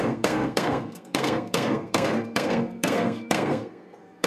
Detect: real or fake fake